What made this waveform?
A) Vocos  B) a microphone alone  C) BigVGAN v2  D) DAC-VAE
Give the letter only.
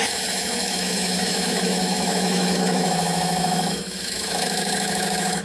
D